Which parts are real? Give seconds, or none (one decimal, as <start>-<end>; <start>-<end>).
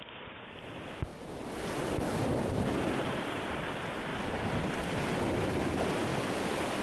0.0-6.8